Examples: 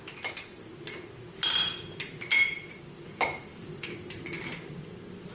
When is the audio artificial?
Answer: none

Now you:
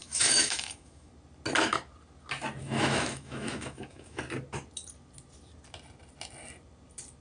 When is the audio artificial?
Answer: 0.0-1.1 (autoencoder, DAC-VAE); 2.6-4.2

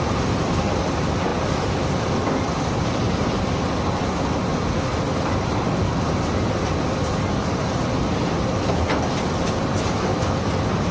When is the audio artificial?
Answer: none

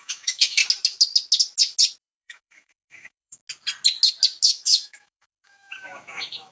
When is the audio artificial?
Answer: 0.0-0.6 (autoencoder, DAC-VAE); 2.0-3.4; 4.5-6.5

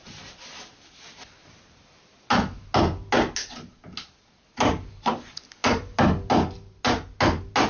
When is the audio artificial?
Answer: none

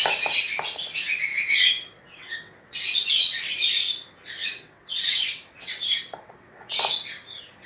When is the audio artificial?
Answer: 1.3-3.5 (vocoder, WaveNeXt); 4.4-6.8

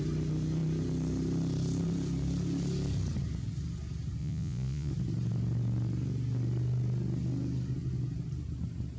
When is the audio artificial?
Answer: 4.2-4.9 (vocoder, Vocos)

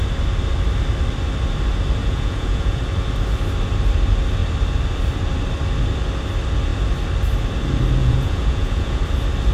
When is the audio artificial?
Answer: 2.0-2.8 (vocoder, Vocos); 8.0-9.0